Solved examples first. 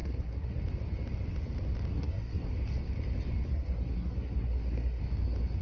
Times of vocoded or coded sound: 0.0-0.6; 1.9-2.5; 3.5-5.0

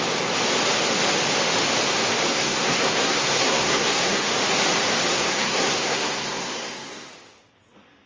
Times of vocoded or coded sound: 2.3-4.3; 5.1-7.1

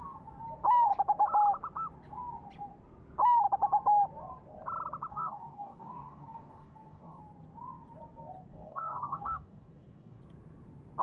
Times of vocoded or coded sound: 5.1-7.2; 8.5-10.2

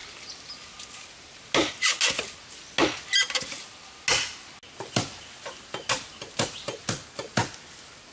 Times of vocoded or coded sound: none

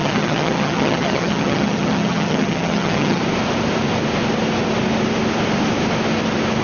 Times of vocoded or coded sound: 0.0-3.2

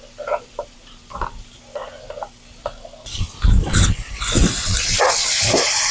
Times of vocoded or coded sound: none

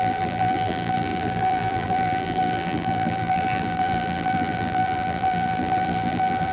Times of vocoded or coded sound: 0.0-6.5

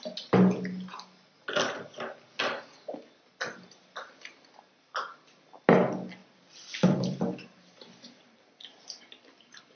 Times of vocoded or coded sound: 6.2-9.0